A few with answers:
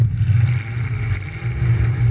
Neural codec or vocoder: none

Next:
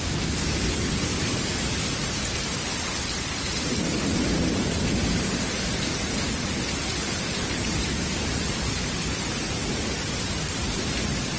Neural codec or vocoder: none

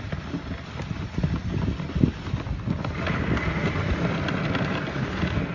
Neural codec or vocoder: none